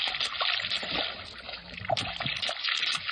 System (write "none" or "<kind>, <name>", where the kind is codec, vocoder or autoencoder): none